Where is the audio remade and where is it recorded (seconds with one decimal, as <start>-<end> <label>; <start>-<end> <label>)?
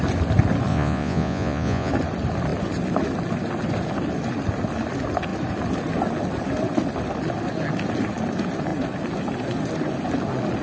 0.0-0.7 recorded; 0.7-1.9 remade; 1.9-10.6 recorded